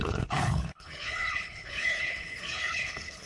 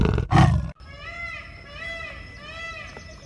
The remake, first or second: first